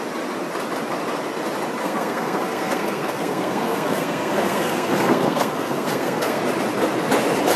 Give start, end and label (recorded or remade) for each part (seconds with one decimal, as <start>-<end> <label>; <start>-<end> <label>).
0.0-1.8 recorded; 1.8-6.4 remade; 6.4-7.6 recorded